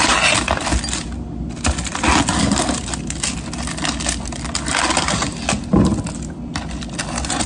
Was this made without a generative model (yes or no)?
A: yes